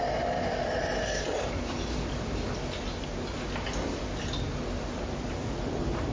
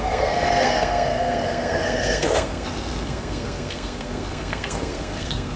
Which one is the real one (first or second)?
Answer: first